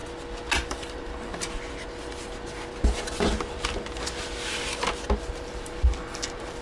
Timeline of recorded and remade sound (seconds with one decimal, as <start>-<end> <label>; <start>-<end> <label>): 0.0-0.7 recorded; 0.7-1.3 remade; 1.3-5.3 recorded; 5.3-6.6 remade